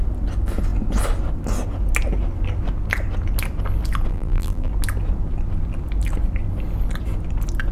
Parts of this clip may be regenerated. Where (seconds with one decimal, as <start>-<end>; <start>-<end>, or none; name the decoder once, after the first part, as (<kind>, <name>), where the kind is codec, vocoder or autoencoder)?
4.1-4.7 (vocoder, BigVGAN v2)